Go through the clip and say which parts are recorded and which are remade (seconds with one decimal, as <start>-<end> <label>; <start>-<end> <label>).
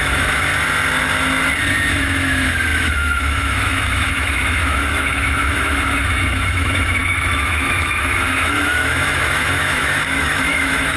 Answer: 0.0-0.5 remade; 0.5-2.0 recorded; 2.0-11.0 remade